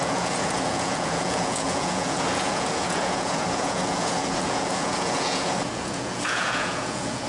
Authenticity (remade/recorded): remade